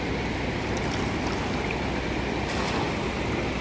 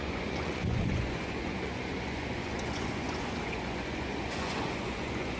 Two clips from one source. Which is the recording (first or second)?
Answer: first